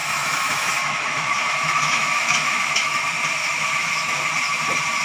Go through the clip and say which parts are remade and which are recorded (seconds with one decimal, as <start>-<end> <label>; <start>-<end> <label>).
0.0-3.0 remade; 3.0-3.4 recorded; 3.4-4.2 remade; 4.2-5.0 recorded